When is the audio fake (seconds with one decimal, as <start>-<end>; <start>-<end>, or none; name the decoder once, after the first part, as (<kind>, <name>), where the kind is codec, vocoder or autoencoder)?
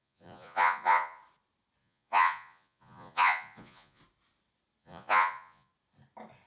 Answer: 0.0-1.2 (vocoder, Vocos); 1.8-4.0; 4.8-5.7